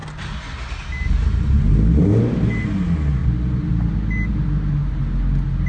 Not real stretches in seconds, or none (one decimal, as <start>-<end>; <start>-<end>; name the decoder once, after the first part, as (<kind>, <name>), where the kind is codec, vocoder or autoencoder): none

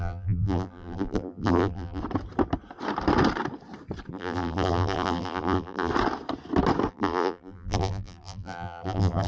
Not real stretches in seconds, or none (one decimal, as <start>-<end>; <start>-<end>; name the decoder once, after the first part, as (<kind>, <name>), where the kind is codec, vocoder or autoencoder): 0.0-2.0 (vocoder, BigVGAN v2); 4.1-5.9; 6.9-9.3

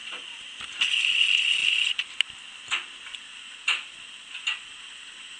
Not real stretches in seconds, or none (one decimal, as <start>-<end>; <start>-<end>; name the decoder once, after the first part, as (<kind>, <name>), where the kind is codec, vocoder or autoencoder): 0.0-0.9 (vocoder, BigVGAN v2)

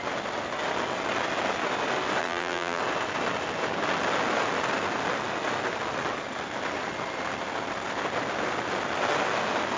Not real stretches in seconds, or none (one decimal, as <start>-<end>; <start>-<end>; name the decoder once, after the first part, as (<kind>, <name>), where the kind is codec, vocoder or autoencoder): 2.2-2.8 (vocoder, BigVGAN v2)